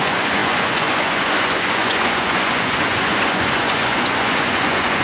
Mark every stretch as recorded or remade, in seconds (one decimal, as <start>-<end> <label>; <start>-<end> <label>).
0.0-5.0 remade